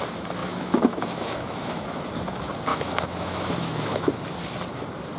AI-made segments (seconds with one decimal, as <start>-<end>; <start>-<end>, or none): 0.4-2.0; 2.7-4.1